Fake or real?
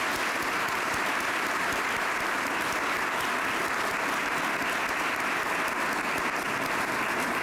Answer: real